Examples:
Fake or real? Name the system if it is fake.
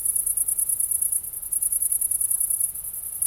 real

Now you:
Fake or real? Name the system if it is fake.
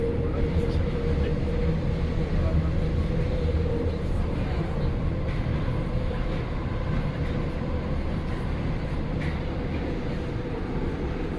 real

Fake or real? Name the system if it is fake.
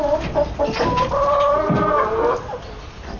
real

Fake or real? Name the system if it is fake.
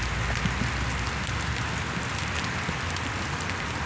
real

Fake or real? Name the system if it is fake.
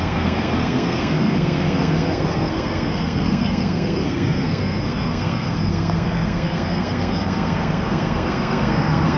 fake, codec, SNAC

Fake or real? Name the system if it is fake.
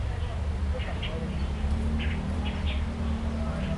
real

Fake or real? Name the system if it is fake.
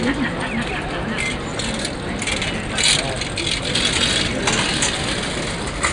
real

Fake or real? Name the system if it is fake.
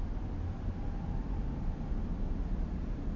real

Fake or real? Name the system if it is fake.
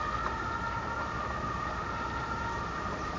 real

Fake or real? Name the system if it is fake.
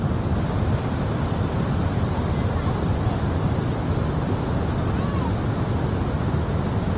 real